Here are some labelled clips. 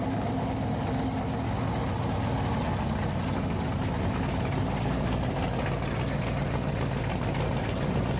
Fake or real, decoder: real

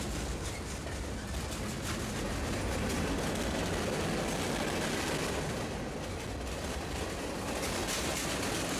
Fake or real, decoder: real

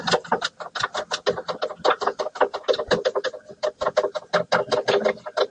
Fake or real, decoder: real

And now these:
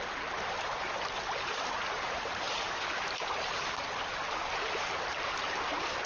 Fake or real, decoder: real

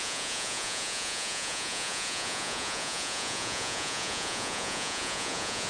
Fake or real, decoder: fake, vocoder, Vocos